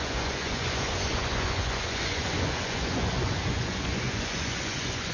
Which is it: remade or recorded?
remade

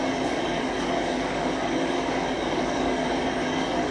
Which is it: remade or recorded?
remade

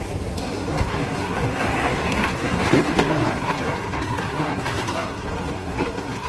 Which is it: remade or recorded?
remade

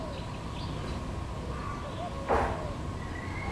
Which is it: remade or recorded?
recorded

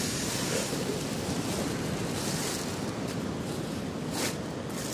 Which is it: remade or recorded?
remade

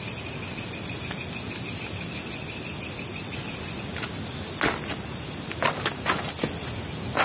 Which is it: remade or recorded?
recorded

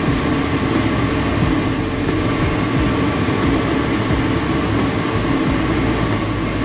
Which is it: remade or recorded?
recorded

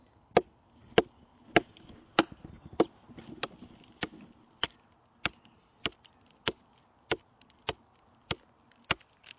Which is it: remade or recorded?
recorded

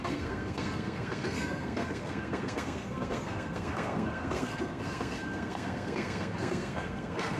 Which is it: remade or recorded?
remade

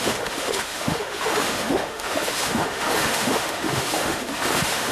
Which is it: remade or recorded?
remade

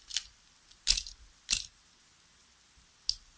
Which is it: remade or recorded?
recorded